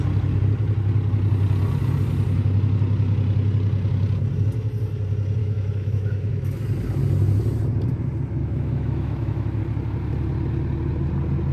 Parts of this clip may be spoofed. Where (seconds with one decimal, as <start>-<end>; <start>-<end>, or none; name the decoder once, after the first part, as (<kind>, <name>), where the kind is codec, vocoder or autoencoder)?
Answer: 5.4-6.6 (autoencoder, DAC-VAE); 8.4-9.6